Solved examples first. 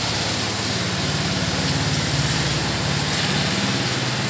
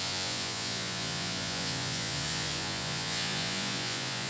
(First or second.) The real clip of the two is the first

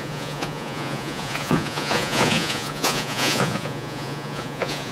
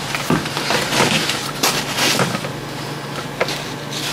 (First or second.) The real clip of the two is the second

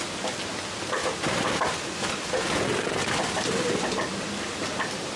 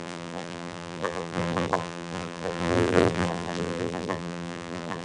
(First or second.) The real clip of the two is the first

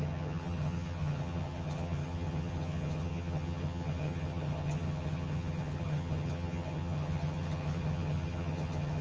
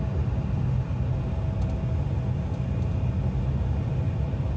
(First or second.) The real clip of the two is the second